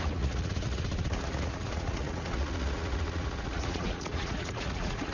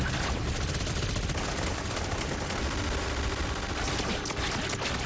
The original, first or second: second